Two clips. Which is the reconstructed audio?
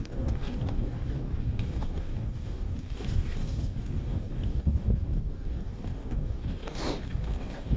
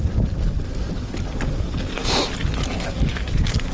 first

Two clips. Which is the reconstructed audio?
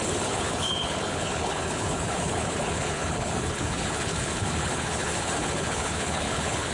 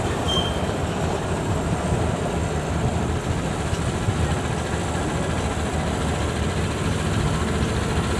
first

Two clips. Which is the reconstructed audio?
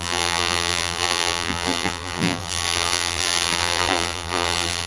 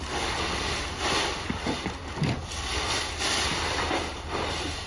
first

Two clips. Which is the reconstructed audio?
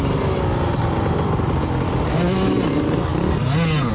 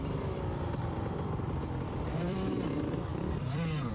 second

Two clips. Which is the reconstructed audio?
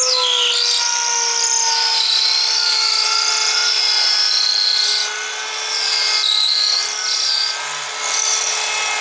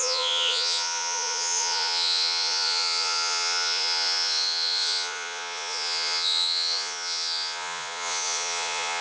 second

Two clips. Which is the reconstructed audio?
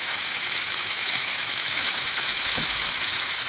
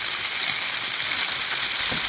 first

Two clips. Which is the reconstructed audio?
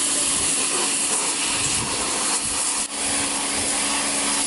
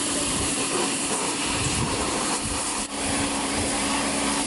second